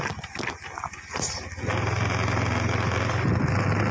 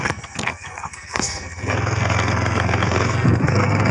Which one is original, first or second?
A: first